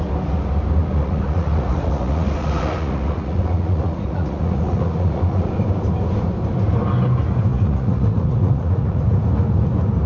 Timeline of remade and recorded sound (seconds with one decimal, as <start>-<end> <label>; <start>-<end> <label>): 0.0-0.8 recorded; 0.8-5.5 remade; 5.5-7.5 recorded; 7.5-9.0 remade; 9.0-10.1 recorded